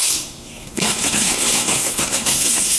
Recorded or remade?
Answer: remade